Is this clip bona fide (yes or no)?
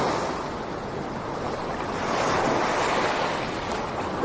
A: yes